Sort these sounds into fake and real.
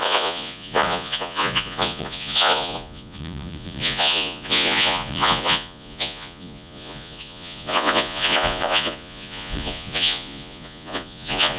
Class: fake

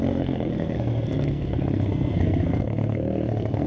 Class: fake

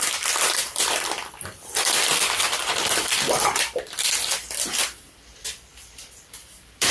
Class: fake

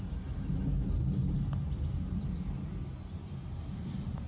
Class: real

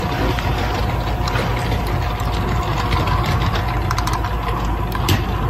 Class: real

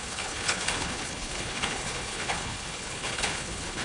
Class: fake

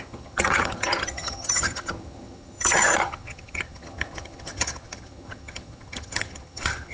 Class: fake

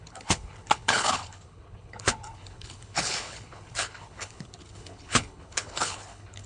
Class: fake